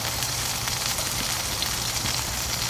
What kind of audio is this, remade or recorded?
remade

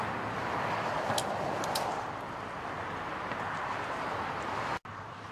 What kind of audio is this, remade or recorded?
recorded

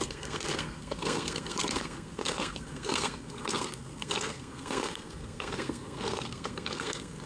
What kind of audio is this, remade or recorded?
remade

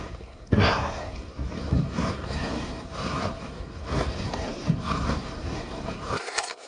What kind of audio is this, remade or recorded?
remade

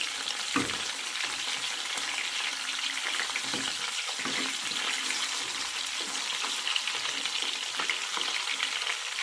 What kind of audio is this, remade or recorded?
recorded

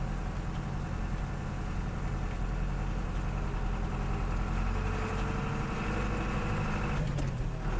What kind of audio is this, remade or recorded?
recorded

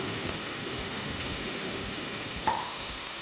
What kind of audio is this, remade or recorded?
remade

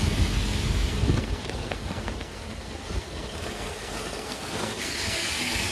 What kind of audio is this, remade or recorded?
remade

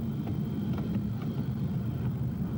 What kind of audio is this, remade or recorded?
remade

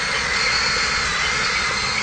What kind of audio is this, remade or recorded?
remade